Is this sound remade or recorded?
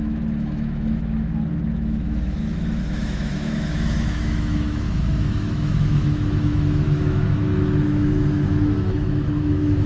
remade